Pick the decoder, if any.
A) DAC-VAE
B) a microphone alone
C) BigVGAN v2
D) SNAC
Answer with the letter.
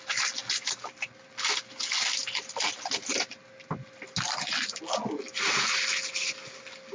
B